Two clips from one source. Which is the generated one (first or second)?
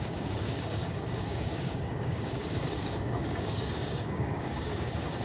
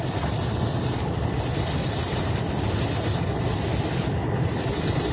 first